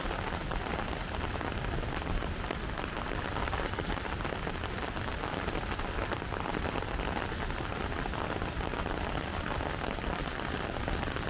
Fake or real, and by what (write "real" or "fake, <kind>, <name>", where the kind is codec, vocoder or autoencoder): fake, vocoder, BigVGAN v2